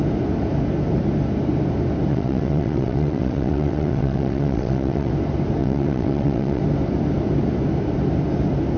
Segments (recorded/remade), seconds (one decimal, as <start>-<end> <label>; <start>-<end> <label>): 0.0-2.1 recorded; 2.1-5.1 remade; 5.1-5.6 recorded; 5.6-6.6 remade; 6.6-8.8 recorded